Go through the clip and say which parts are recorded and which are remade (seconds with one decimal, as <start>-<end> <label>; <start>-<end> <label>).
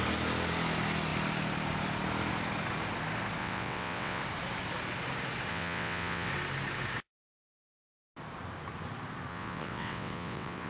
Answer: 0.0-3.4 recorded; 3.4-4.2 remade; 4.2-5.5 recorded; 5.5-6.3 remade; 6.3-9.3 recorded; 9.3-10.7 remade